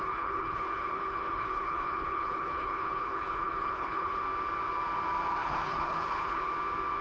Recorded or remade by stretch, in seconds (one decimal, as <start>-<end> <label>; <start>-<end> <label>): 0.0-4.2 remade; 4.2-5.4 recorded; 5.4-6.4 remade; 6.4-7.0 recorded